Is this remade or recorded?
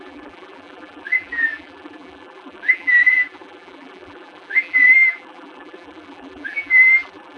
remade